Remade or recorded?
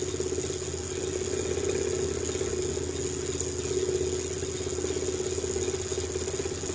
recorded